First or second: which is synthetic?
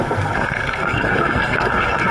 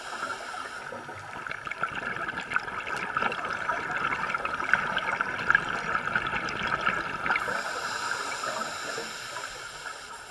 first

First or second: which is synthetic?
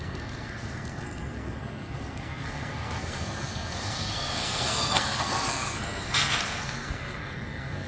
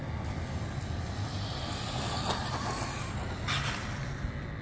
first